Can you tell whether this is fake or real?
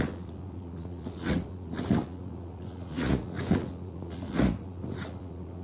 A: fake